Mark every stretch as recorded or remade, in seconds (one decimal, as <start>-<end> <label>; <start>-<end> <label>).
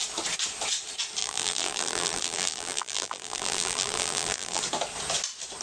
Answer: 0.0-1.2 recorded; 1.2-4.6 remade; 4.6-5.6 recorded